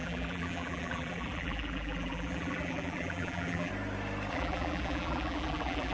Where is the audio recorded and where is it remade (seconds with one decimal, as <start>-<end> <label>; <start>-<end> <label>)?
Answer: 0.0-3.7 remade; 3.7-4.3 recorded; 4.3-5.9 remade